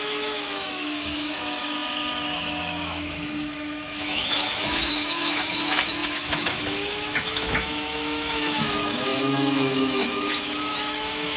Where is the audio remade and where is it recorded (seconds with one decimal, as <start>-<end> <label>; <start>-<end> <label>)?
0.0-11.4 remade